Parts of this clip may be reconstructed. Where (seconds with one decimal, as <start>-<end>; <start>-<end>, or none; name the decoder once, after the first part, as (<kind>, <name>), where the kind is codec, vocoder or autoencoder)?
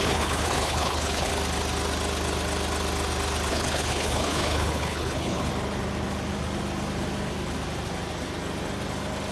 0.0-1.3 (codec, HILCodec); 3.5-5.5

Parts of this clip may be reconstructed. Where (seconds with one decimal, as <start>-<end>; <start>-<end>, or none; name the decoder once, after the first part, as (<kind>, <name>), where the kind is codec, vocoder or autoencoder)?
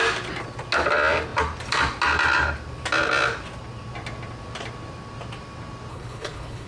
5.9-6.7 (codec, HILCodec)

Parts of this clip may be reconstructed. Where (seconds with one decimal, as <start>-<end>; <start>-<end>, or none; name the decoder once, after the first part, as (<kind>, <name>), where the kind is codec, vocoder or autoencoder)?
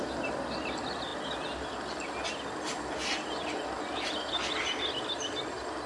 none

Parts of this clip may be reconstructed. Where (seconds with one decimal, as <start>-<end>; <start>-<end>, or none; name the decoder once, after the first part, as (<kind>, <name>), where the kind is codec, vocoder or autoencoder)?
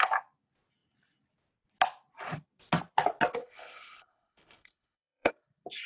3.4-5.3 (codec, HILCodec)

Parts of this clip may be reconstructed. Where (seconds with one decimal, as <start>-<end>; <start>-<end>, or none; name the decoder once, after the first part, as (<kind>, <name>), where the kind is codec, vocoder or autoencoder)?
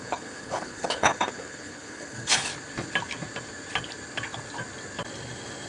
0.0-2.5 (codec, HILCodec)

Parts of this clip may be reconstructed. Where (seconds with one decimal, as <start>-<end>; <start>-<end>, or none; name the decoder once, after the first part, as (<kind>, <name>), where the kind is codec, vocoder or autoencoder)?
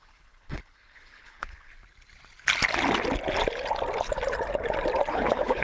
0.0-1.7 (codec, HILCodec); 5.1-5.6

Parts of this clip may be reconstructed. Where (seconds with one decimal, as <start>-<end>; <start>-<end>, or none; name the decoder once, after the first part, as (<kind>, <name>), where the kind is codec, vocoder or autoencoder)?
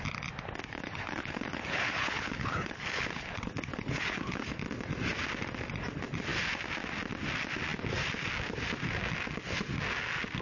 0.6-4.5 (codec, HILCodec)